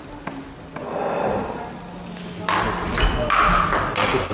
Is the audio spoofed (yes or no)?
no